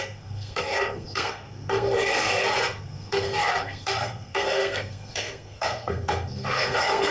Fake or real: fake